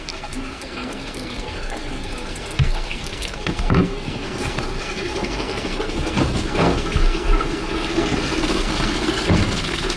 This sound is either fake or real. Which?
fake